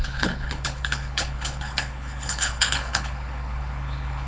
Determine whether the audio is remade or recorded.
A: remade